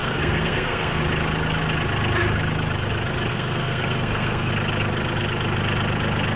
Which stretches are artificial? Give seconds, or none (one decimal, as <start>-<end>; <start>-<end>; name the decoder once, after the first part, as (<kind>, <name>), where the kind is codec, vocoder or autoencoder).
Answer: 0.0-1.0 (codec, SNAC); 3.3-4.5